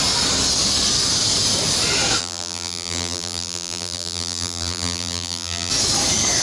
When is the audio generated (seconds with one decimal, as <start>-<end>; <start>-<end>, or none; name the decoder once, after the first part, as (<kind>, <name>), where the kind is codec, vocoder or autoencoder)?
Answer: 2.2-5.7 (vocoder, BigVGAN v2)